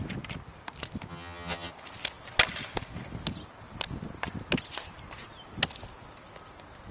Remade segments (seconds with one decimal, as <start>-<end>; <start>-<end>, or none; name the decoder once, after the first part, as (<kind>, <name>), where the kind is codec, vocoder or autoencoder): 1.1-1.7 (vocoder, HiFi-GAN)